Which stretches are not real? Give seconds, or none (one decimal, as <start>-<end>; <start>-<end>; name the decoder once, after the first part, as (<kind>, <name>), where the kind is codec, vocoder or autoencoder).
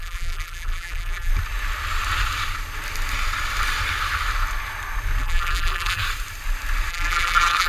0.0-1.3 (vocoder, BigVGAN v2); 5.2-6.0; 6.9-7.7